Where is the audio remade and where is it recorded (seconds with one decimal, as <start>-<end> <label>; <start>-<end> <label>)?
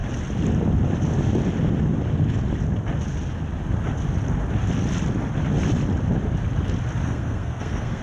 0.0-7.0 recorded; 7.0-8.0 remade